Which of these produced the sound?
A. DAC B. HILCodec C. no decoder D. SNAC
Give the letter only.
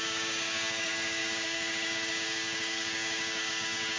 A